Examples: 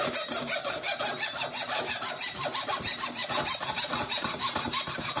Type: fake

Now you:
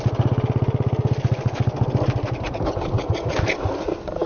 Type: real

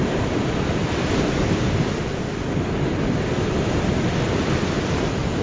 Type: fake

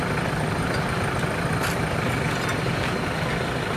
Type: real